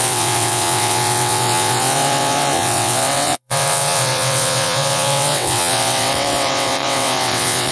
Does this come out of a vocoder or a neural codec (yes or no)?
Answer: yes